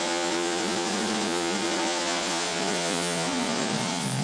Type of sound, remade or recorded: remade